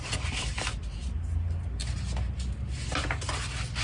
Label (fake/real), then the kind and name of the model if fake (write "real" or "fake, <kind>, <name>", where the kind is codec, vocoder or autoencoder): real